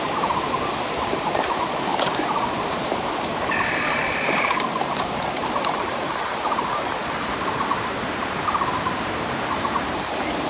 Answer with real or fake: fake